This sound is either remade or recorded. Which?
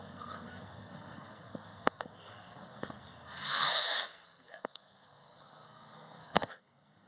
remade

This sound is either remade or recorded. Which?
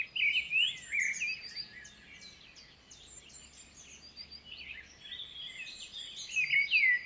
recorded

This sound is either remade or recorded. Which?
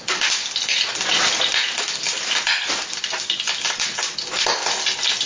recorded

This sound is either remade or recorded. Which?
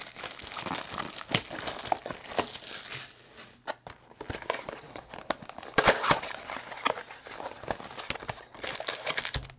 recorded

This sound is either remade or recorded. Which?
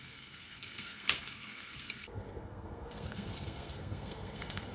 remade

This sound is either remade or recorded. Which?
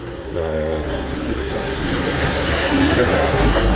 remade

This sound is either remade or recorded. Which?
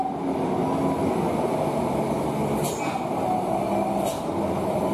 recorded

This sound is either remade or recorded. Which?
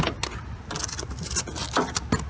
recorded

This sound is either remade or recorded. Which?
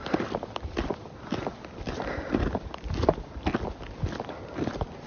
recorded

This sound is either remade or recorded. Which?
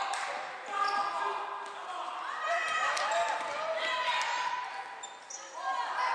recorded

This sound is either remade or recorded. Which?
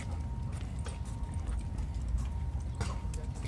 recorded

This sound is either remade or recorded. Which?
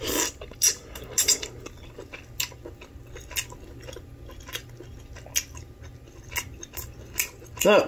recorded